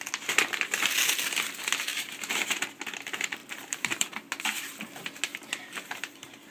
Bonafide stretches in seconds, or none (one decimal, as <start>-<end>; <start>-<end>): 0.0-1.9; 2.6-3.4; 4.1-5.3